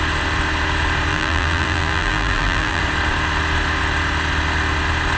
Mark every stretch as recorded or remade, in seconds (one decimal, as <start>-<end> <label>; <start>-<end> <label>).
0.0-1.1 recorded; 1.1-2.8 remade; 2.8-5.2 recorded